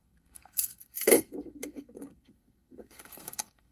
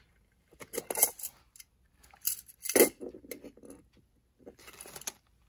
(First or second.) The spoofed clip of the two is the first